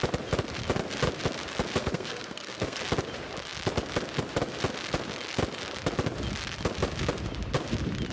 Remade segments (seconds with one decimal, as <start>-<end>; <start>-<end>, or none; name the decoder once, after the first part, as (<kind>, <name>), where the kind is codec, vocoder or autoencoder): 1.8-2.8 (codec, SNAC)

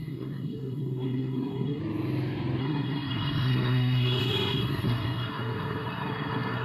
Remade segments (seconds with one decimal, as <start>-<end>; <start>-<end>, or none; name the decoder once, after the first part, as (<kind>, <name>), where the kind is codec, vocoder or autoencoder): 0.0-1.8 (codec, SNAC); 2.6-6.6

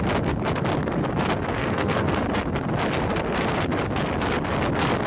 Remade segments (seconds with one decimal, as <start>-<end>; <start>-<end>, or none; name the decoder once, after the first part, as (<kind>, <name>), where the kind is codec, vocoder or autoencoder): 1.6-2.2 (codec, SNAC)

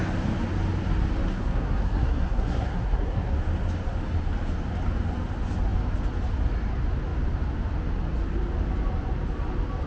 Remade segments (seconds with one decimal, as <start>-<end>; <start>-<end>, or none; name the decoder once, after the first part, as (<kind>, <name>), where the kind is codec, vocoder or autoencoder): 1.3-3.3 (codec, SNAC)

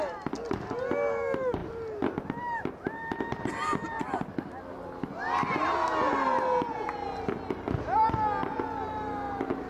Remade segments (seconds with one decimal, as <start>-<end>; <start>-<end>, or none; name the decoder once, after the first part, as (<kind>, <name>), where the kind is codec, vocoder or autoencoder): none

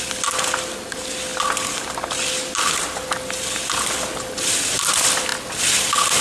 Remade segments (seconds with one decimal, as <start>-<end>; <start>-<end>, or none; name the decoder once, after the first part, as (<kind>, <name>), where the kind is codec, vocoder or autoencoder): none

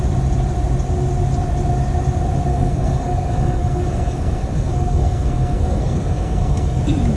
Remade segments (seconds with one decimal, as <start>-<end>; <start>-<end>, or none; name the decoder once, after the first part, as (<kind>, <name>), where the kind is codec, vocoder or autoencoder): 2.5-6.8 (codec, SNAC)

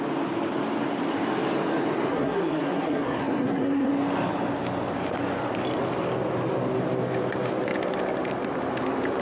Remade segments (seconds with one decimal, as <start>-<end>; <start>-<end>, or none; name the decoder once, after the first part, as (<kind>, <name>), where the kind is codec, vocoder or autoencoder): 2.1-3.9 (codec, SNAC)